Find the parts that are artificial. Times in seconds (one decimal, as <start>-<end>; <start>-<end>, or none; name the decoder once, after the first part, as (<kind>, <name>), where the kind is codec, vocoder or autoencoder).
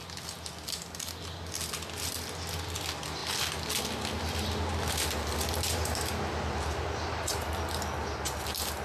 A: none